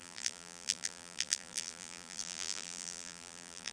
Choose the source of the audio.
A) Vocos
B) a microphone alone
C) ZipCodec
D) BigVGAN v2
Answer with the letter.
D